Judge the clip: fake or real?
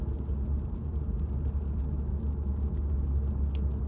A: real